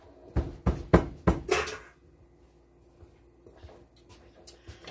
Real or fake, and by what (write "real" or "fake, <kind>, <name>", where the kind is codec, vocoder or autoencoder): real